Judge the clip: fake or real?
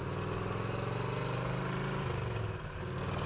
real